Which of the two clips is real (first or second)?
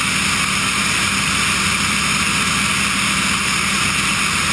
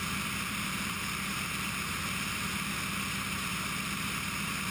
first